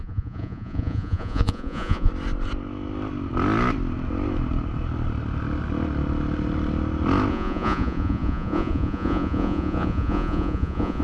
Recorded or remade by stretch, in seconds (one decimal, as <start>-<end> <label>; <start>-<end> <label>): 0.0-2.1 remade; 2.1-7.3 recorded; 7.3-11.0 remade